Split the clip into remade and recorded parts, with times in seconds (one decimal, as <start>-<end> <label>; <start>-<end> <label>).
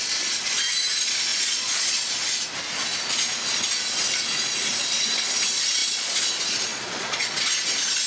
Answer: 0.0-1.3 recorded; 1.3-2.1 remade; 2.1-5.8 recorded; 5.8-6.3 remade; 6.3-6.7 recorded; 6.7-7.4 remade; 7.4-8.1 recorded